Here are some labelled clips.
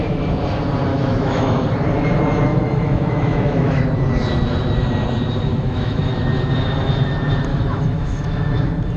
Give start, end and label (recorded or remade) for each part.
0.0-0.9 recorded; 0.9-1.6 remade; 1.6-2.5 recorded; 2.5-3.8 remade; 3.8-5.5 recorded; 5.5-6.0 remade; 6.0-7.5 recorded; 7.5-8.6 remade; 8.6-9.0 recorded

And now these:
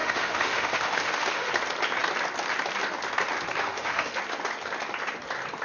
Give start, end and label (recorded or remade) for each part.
0.0-1.5 remade; 1.5-3.6 recorded; 3.6-4.2 remade; 4.2-5.6 recorded

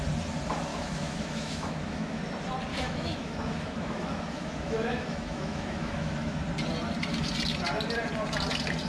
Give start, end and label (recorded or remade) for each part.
0.0-0.7 recorded; 0.7-2.2 remade; 2.2-2.7 recorded; 2.7-6.4 remade; 6.4-8.9 recorded

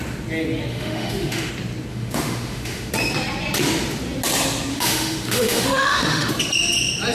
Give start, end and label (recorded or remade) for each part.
0.0-0.7 recorded; 0.7-1.5 remade; 1.5-1.9 recorded; 1.9-2.9 remade; 2.9-4.7 recorded; 4.7-6.3 remade; 6.3-7.1 recorded

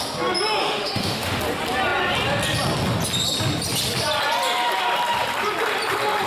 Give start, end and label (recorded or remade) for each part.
0.0-0.6 recorded; 0.6-1.4 remade; 1.4-6.3 recorded

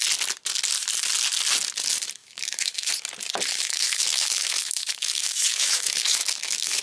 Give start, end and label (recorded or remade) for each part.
0.0-2.2 recorded; 2.2-2.9 remade; 2.9-3.5 recorded; 3.5-6.8 remade

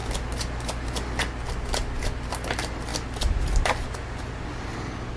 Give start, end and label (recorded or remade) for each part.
0.0-5.2 recorded

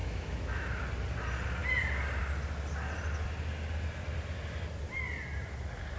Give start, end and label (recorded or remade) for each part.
0.0-0.7 remade; 0.7-6.0 recorded